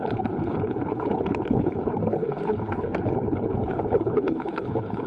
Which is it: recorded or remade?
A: remade